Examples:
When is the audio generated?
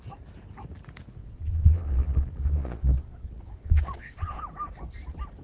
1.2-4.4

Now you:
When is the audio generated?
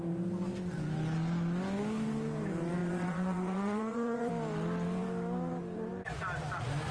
2.8-4.3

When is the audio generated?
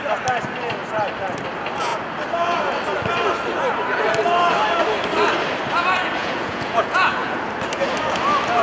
6.2-7.4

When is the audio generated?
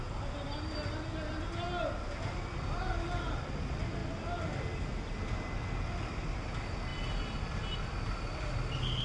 none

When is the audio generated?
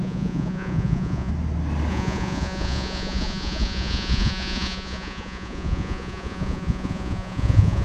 0.0-1.3; 1.9-7.8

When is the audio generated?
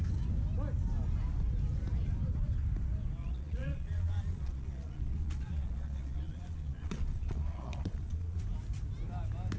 3.2-8.4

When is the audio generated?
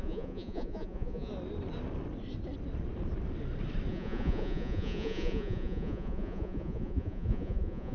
0.0-1.3; 3.9-7.9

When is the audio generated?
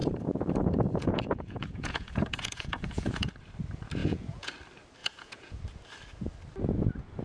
0.0-3.3; 4.0-4.5; 5.0-5.6